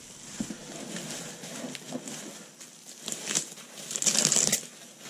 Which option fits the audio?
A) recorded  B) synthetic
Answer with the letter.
A